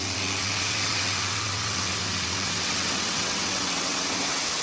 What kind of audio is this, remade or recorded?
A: remade